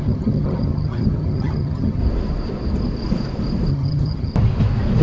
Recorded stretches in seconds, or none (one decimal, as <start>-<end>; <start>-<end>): 2.0-3.7; 4.3-5.0